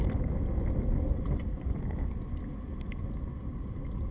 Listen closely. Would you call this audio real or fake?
real